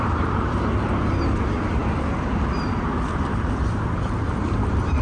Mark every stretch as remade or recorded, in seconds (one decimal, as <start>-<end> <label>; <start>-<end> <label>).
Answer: 0.0-1.8 remade; 1.8-3.2 recorded; 3.2-5.0 remade